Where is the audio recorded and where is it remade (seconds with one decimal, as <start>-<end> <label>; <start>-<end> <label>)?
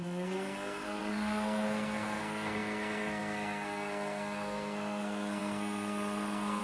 0.0-6.6 remade